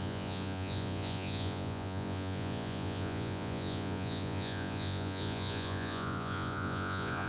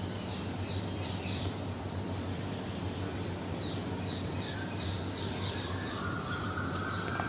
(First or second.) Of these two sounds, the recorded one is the second